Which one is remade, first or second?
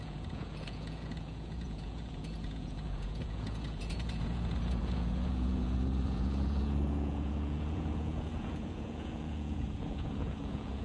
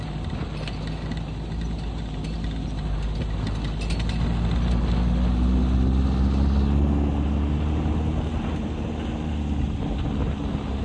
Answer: first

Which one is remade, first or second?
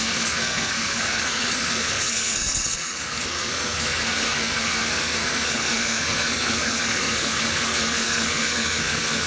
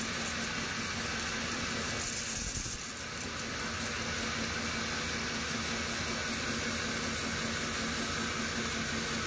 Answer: first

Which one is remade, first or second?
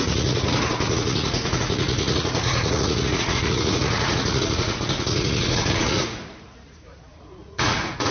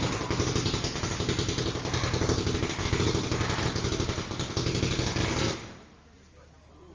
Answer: first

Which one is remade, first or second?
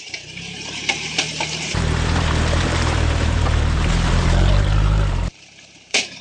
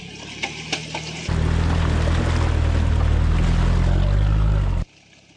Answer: first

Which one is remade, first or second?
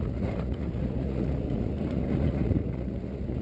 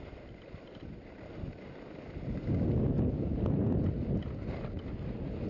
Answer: first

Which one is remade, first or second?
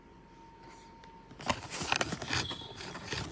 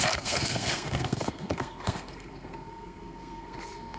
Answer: second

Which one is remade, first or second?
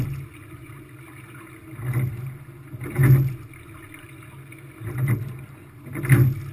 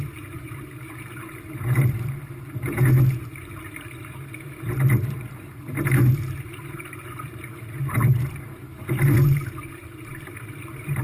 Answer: second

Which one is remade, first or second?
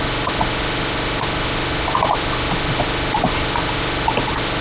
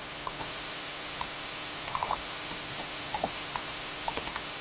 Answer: second